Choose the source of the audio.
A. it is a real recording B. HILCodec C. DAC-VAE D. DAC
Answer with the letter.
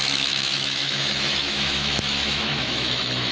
C